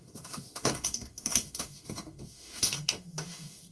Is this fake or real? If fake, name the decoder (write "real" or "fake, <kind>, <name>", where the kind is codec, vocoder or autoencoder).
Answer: fake, autoencoder, DAC-VAE